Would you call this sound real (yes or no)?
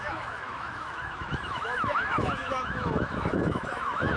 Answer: no